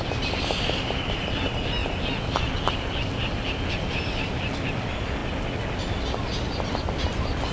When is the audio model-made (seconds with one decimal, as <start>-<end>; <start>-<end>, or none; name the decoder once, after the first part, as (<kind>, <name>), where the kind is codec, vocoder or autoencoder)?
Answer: none